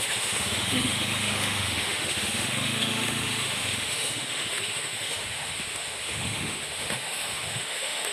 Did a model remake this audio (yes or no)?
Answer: yes